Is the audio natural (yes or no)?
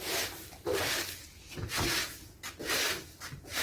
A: yes